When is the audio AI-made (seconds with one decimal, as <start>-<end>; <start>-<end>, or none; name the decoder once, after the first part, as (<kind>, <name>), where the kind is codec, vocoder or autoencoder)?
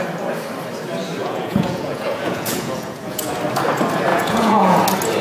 1.2-3.3 (vocoder, Vocos); 4.1-4.8